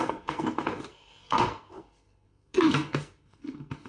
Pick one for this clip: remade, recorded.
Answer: remade